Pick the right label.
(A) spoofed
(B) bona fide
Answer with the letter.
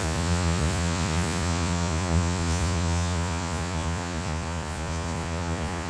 A